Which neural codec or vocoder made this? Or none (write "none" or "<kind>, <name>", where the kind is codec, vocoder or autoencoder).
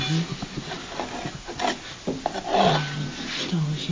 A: none